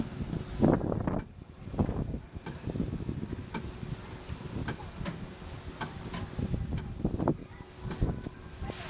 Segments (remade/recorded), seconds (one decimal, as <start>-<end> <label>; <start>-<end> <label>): 0.0-8.9 recorded